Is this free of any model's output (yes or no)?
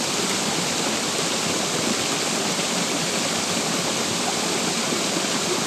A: yes